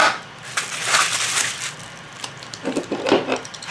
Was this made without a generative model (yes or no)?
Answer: yes